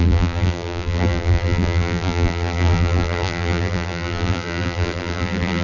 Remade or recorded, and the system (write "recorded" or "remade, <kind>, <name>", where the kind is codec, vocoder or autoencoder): remade, vocoder, BigVGAN v2